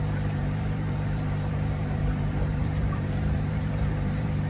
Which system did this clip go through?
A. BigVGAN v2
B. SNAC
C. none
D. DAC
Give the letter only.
A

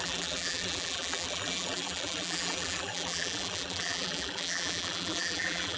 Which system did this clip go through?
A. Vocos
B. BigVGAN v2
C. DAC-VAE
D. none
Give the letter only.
B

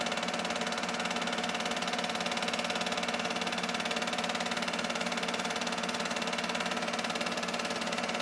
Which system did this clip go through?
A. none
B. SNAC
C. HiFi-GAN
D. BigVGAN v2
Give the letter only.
A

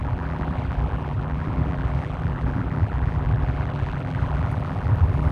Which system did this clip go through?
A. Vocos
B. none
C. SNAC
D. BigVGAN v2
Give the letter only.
D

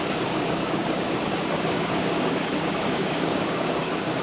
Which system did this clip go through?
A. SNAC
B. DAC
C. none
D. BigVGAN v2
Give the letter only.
B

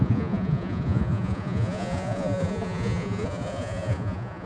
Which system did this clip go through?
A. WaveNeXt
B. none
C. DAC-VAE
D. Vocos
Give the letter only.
D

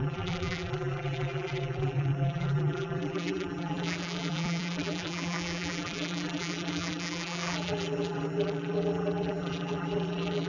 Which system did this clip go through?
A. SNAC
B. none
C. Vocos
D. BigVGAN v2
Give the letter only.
D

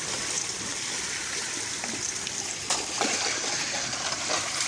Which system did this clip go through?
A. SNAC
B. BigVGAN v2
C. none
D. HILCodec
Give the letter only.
C